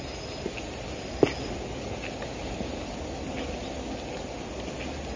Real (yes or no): yes